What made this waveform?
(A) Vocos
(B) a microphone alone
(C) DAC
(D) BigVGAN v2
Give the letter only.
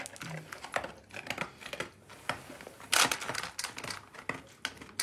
B